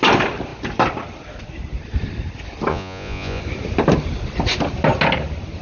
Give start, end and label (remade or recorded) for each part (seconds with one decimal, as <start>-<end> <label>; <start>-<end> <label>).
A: 0.0-2.7 recorded; 2.7-3.4 remade; 3.4-5.6 recorded